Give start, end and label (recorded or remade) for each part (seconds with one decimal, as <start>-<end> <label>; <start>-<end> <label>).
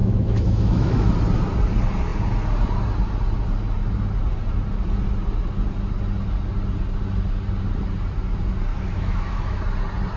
0.0-1.1 remade; 1.1-8.7 recorded; 8.7-9.6 remade; 9.6-10.2 recorded